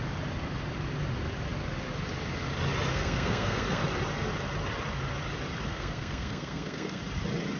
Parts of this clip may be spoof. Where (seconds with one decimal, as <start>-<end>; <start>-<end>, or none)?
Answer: 2.9-3.8; 5.7-7.0